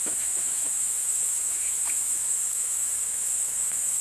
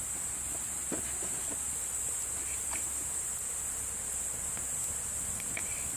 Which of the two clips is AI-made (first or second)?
first